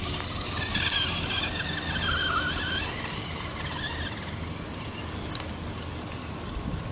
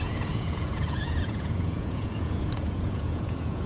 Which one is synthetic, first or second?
second